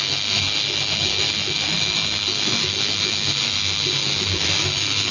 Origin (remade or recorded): remade